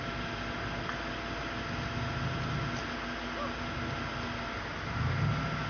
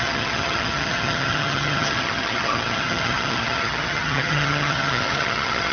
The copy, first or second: second